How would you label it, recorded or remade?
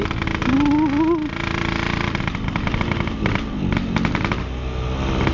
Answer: recorded